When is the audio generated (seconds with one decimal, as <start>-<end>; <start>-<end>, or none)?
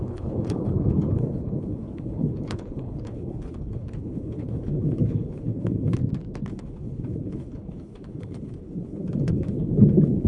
0.0-6.0; 6.5-10.3